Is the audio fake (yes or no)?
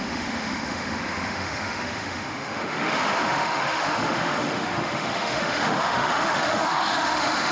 yes